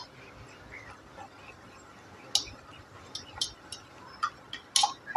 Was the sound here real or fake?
real